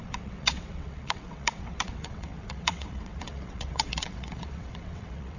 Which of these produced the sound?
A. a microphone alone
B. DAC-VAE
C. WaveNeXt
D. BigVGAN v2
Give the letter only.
C